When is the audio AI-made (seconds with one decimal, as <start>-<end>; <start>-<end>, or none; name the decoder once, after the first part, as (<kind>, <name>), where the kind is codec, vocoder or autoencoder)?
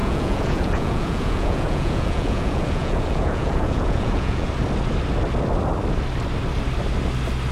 0.0-4.5 (vocoder, Vocos)